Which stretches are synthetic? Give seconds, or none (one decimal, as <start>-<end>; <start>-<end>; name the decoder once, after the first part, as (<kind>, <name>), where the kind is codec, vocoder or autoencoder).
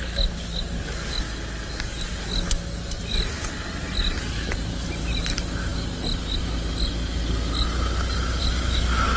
none